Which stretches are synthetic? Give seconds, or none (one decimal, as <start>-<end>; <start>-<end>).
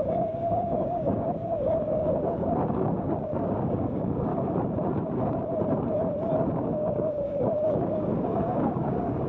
0.0-4.3; 6.5-9.3